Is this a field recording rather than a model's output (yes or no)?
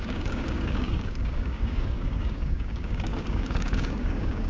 no